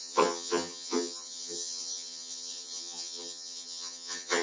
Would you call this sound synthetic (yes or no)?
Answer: yes